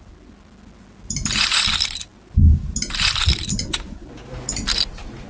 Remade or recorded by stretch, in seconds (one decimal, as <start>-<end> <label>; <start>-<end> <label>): 0.0-5.3 recorded